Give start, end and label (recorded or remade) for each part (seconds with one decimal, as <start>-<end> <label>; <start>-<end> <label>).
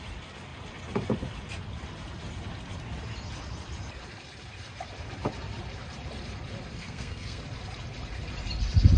0.0-6.7 recorded; 6.7-7.4 remade; 7.4-9.0 recorded